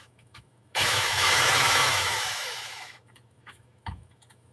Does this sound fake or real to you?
fake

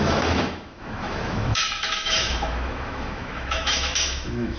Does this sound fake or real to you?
fake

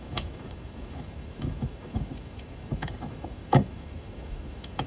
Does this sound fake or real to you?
fake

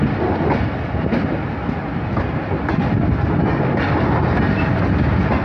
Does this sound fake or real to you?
real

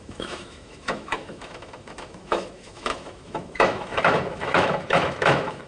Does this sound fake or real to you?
fake